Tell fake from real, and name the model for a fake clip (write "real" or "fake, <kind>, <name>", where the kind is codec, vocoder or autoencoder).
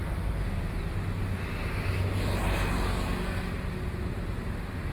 real